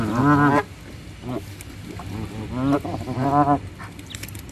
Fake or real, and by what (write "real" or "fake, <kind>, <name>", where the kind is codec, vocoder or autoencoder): real